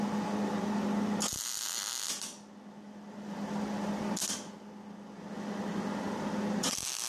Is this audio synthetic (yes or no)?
no